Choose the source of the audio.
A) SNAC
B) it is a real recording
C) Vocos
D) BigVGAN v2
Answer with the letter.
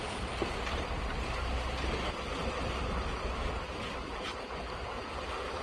B